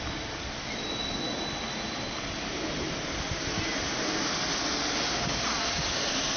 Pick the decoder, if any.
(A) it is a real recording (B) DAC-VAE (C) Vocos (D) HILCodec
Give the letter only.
A